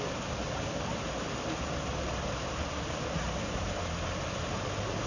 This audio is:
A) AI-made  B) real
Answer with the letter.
B